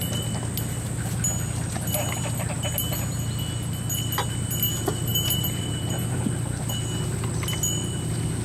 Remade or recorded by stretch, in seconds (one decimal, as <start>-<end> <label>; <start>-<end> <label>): 0.0-5.1 recorded; 5.1-6.2 remade; 6.2-8.4 recorded